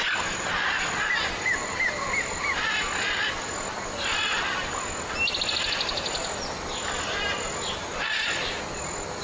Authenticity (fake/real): real